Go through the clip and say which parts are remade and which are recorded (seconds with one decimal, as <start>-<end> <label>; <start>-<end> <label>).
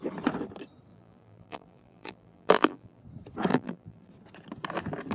0.0-0.9 recorded; 0.9-3.0 remade; 3.0-3.5 recorded; 3.5-4.1 remade; 4.1-5.1 recorded